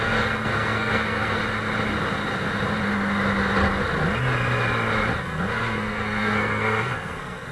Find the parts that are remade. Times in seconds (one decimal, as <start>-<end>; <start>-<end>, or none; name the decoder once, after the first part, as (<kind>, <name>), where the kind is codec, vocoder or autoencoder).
0.0-1.4 (codec, SNAC); 5.2-7.5